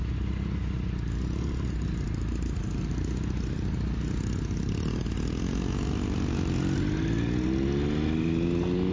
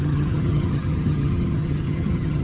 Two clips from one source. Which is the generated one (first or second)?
second